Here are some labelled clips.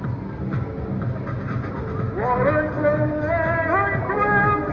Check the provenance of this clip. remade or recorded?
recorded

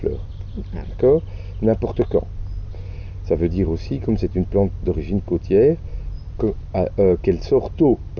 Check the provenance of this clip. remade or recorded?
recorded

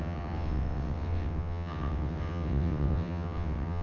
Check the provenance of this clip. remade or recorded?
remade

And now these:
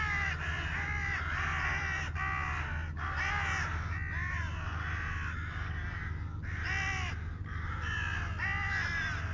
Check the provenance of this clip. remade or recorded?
recorded